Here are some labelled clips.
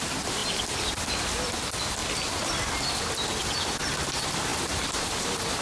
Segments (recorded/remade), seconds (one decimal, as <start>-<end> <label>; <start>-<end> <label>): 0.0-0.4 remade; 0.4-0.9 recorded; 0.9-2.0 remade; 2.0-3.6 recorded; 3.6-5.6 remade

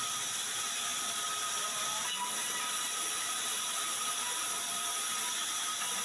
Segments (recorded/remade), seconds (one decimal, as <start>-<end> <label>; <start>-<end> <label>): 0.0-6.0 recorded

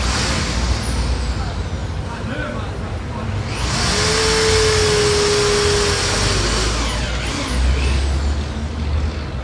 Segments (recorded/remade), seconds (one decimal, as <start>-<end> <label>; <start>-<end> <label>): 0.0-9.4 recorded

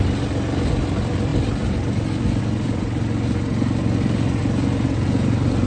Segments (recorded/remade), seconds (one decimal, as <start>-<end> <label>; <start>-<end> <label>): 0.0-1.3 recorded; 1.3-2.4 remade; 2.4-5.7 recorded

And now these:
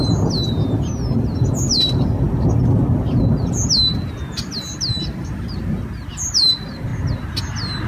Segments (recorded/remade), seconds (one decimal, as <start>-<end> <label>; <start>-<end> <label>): 0.0-4.7 recorded; 4.7-5.6 remade; 5.6-7.9 recorded